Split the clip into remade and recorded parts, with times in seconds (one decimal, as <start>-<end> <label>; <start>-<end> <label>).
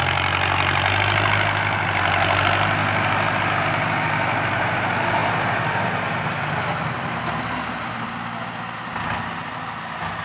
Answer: 0.0-10.2 recorded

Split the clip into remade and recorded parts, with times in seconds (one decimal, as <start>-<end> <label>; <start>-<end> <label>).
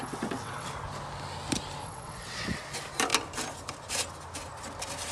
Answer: 0.0-0.7 remade; 0.7-1.8 recorded; 1.8-2.6 remade; 2.6-5.1 recorded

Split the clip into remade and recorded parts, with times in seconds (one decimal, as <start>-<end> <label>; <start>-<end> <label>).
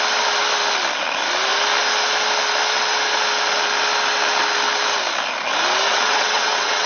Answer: 0.0-5.9 recorded; 5.9-6.9 remade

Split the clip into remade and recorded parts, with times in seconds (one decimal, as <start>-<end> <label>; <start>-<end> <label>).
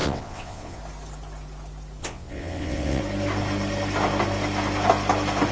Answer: 0.0-0.8 remade; 0.8-2.0 recorded; 2.0-3.0 remade; 3.0-5.5 recorded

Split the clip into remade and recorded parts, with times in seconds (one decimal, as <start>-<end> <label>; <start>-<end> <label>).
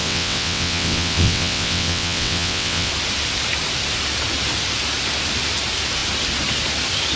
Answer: 0.0-2.9 remade; 2.9-7.2 recorded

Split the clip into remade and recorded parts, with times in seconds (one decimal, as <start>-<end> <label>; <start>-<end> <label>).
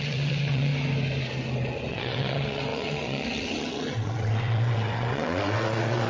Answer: 0.0-0.7 remade; 0.7-1.9 recorded; 1.9-6.1 remade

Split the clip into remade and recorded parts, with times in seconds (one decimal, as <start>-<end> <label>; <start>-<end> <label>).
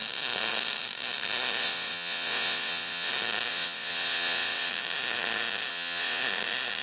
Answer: 0.0-1.6 recorded; 1.6-3.1 remade; 3.1-3.5 recorded; 3.5-4.7 remade; 4.7-5.7 recorded; 5.7-6.2 remade; 6.2-6.8 recorded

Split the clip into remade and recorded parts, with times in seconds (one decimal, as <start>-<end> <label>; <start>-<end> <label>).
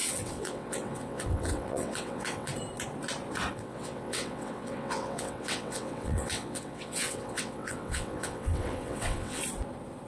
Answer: 0.0-2.5 remade; 2.5-3.5 recorded; 3.5-9.4 remade; 9.4-10.1 recorded